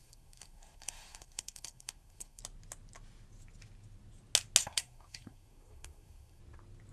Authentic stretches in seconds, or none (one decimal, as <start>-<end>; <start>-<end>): 2.4-4.6; 6.4-6.9